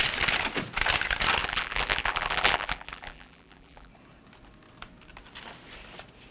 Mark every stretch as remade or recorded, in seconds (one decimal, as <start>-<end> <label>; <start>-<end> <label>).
0.0-1.4 recorded; 1.4-3.9 remade; 3.9-6.3 recorded